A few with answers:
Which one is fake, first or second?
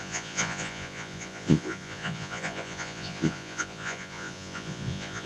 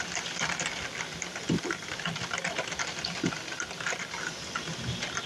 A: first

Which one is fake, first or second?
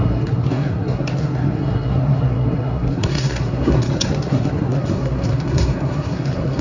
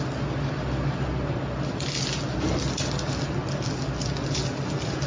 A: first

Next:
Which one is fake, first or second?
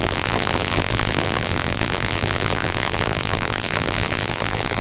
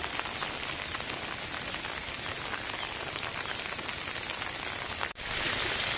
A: first